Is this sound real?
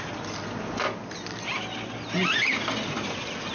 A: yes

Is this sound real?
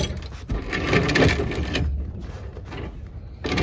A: yes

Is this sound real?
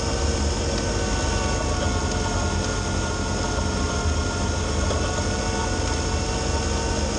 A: yes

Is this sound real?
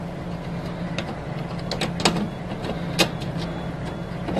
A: yes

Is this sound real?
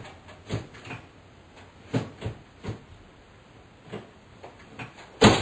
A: yes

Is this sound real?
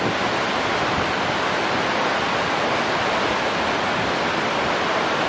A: yes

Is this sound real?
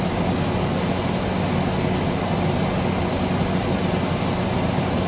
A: yes